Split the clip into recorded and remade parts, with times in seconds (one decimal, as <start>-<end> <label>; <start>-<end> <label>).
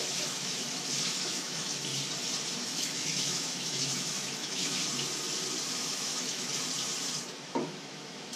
0.0-1.9 remade; 1.9-2.6 recorded; 2.6-4.8 remade; 4.8-5.7 recorded; 5.7-6.5 remade; 6.5-7.3 recorded; 7.3-8.4 remade